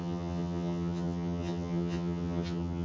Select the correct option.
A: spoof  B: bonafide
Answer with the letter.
A